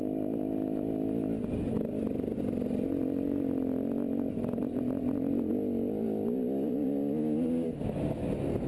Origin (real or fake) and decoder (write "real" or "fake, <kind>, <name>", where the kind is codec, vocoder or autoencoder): real